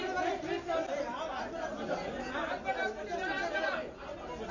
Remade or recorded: recorded